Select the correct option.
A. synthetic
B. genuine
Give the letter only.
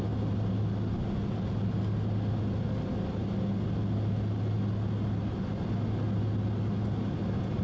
B